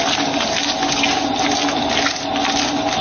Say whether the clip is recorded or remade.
recorded